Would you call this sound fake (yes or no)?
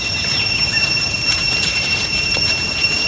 yes